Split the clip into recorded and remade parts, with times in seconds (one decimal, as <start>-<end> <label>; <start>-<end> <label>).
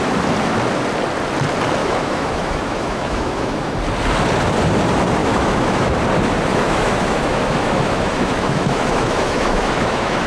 0.0-1.8 recorded; 1.8-3.8 remade; 3.8-5.2 recorded; 5.2-6.0 remade; 6.0-6.5 recorded; 6.5-10.3 remade